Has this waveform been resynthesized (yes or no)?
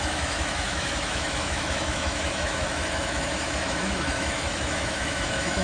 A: yes